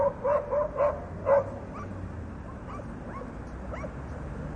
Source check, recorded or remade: recorded